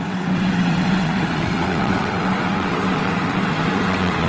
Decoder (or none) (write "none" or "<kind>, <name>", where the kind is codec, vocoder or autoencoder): vocoder, WaveNeXt